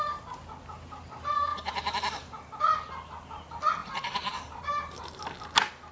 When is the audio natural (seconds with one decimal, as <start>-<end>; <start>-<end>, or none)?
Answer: 0.0-1.5; 2.6-3.8; 5.2-5.9